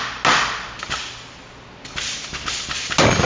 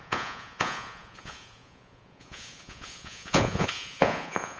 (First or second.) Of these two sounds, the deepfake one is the second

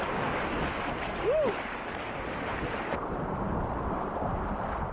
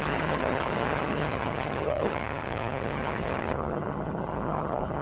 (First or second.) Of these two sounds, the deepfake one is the second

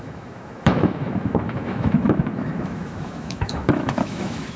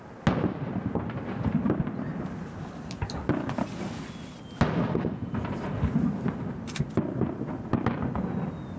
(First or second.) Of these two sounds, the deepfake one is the first